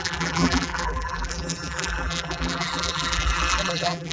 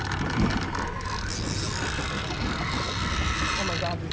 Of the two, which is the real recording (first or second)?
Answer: second